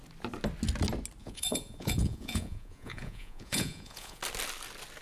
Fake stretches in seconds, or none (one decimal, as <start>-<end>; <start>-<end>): 1.2-4.2